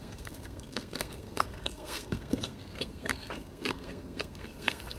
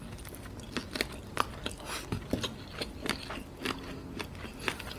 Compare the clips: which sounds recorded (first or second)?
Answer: second